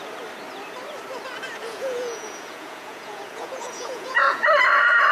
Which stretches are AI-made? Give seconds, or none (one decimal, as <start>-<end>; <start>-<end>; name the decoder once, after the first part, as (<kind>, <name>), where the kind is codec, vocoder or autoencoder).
1.6-4.6 (vocoder, Vocos)